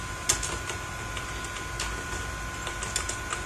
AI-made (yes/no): no